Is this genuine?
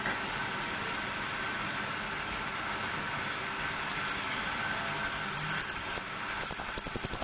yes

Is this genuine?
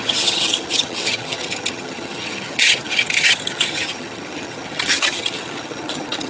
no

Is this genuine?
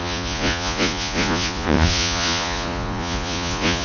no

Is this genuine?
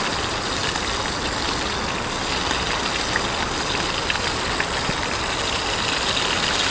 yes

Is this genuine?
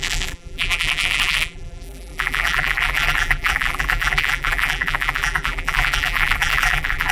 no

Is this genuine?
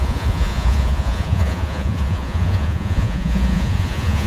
no